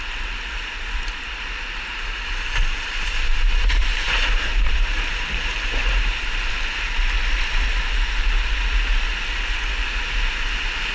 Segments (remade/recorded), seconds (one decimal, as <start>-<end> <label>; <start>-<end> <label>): 0.0-1.9 recorded; 1.9-6.5 remade; 6.5-10.9 recorded